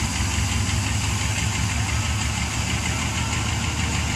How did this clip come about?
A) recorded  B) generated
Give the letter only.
A